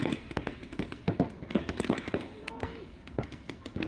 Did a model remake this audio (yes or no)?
yes